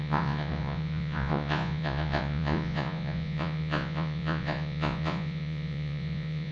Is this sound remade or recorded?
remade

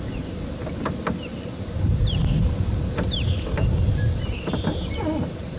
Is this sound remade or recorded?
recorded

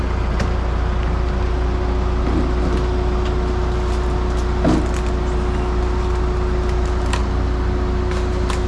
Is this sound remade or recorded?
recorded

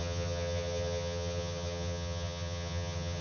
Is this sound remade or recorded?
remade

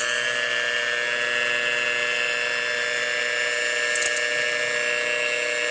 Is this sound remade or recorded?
recorded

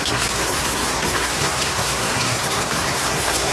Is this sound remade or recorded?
remade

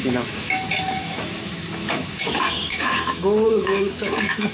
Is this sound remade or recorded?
remade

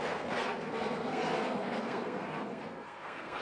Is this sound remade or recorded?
remade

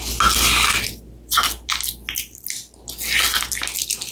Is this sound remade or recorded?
recorded